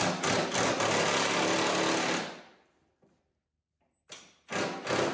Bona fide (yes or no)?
yes